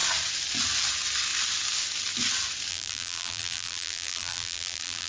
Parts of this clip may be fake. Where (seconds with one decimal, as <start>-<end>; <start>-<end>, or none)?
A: 2.7-5.1